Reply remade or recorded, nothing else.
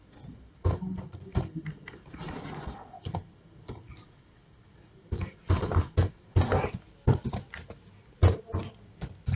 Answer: recorded